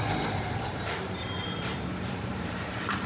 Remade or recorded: remade